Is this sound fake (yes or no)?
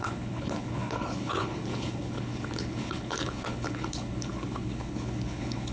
yes